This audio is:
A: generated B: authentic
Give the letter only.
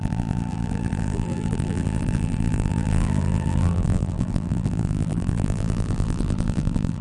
A